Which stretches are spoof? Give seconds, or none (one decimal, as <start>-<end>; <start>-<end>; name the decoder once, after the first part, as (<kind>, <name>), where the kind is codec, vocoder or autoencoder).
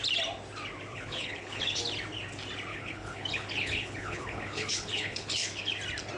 0.9-1.8 (codec, HILCodec); 2.7-5.8